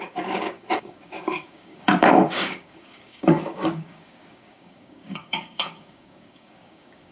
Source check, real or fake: fake